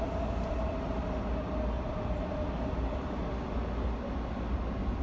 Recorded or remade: recorded